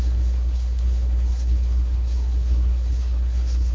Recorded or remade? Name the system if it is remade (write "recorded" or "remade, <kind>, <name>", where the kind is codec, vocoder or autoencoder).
remade, codec, SNAC